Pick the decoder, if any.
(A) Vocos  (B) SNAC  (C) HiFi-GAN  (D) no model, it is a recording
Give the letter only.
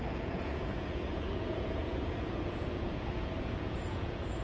A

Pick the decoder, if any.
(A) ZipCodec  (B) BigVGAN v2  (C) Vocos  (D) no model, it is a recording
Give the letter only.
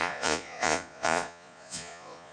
C